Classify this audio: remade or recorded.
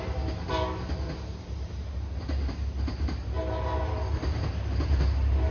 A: recorded